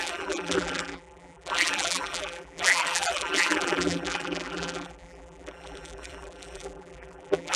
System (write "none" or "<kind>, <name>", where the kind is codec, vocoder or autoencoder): vocoder, BigVGAN v2